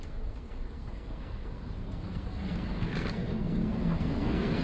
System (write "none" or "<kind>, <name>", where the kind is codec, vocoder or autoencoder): codec, SNAC